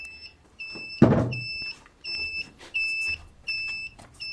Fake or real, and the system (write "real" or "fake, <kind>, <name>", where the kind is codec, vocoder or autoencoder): fake, vocoder, BigVGAN v2